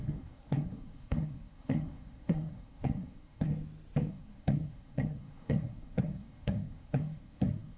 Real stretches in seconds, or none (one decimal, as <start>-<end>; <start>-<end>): 3.5-4.1